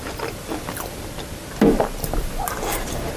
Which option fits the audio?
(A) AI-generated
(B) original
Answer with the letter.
B